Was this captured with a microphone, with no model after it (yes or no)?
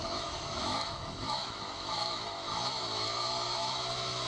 no